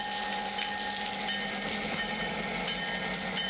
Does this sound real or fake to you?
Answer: real